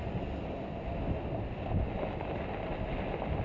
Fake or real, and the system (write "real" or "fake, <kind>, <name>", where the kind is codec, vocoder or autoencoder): real